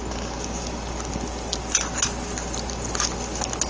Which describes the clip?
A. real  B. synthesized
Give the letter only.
A